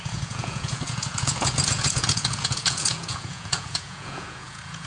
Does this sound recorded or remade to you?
remade